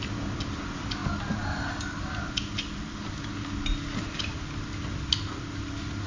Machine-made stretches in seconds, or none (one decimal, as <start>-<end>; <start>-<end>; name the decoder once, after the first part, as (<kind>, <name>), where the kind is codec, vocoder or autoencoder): none